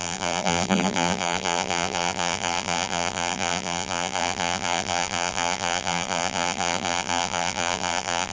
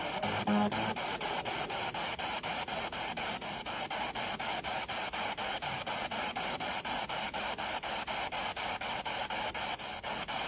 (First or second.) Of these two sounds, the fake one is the first